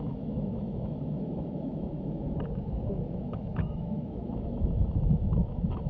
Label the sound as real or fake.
fake